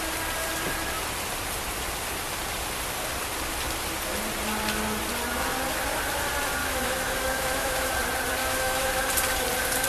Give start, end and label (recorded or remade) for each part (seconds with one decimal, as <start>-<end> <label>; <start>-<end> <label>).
0.0-6.6 recorded; 6.6-7.9 remade; 7.9-8.4 recorded; 8.4-9.0 remade; 9.0-9.9 recorded

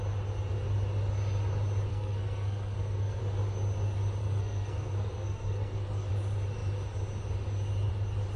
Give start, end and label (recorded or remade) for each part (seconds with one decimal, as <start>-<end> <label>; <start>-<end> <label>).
0.0-1.9 recorded; 1.9-3.2 remade; 3.2-4.2 recorded; 4.2-6.1 remade; 6.1-8.4 recorded

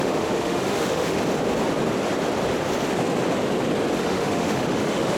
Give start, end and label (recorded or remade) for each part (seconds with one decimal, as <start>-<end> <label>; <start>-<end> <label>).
0.0-1.2 remade; 1.2-4.0 recorded; 4.0-5.2 remade